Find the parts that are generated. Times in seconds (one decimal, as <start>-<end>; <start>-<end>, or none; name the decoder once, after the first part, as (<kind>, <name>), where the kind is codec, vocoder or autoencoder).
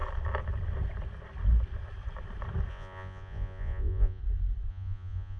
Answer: 2.7-4.2 (vocoder, Vocos); 4.7-5.4